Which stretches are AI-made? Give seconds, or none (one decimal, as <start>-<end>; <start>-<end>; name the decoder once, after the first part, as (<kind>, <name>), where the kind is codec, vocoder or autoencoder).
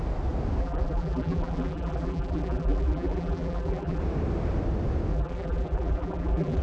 0.6-4.0 (vocoder, BigVGAN v2); 5.1-6.6